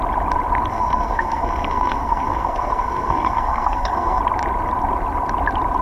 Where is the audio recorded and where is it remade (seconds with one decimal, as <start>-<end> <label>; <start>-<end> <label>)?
0.0-0.7 recorded; 0.7-4.2 remade; 4.2-5.8 recorded